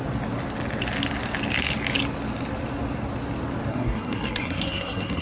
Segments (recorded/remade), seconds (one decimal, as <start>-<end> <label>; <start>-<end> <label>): 0.0-3.7 recorded; 3.7-5.2 remade